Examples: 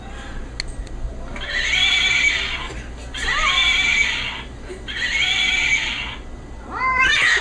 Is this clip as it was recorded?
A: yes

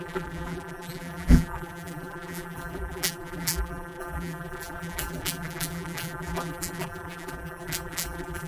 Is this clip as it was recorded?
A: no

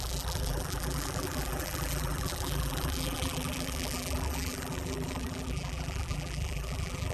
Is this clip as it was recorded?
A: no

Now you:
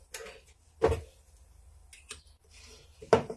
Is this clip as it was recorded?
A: yes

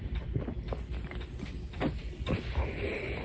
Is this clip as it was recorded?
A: yes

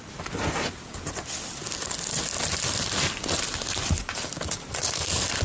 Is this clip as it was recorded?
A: yes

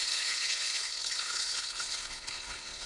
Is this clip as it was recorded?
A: no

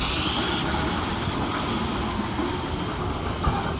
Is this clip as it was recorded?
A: yes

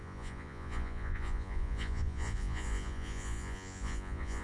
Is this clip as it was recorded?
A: no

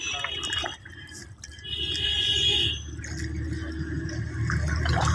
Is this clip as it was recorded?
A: yes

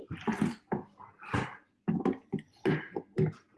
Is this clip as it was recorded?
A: yes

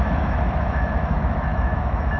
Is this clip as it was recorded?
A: no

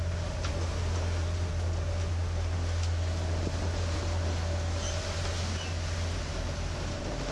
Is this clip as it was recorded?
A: yes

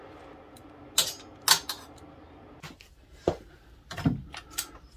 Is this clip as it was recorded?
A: yes